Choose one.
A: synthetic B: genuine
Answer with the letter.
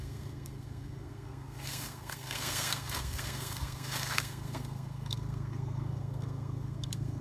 A